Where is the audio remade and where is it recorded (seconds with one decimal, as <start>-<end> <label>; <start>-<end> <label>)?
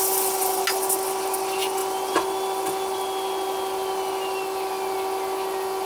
0.0-5.9 recorded